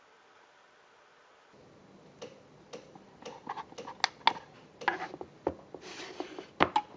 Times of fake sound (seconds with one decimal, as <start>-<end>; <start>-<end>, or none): none